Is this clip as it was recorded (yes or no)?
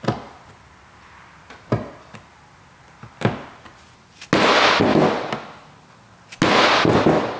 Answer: yes